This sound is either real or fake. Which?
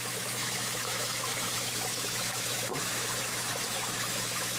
fake